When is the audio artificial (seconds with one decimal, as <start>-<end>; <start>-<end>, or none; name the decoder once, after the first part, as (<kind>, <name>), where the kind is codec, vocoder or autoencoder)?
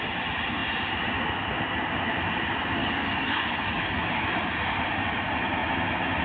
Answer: 2.8-4.3 (codec, DAC)